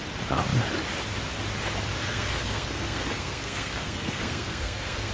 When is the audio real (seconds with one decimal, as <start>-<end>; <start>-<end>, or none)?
0.0-2.0